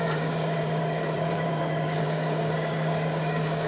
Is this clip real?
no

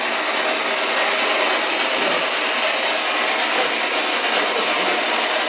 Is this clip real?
yes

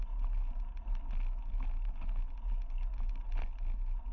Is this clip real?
yes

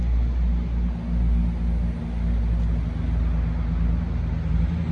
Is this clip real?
yes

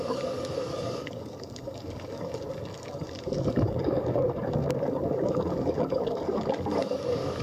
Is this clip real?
no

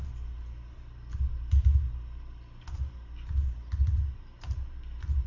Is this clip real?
yes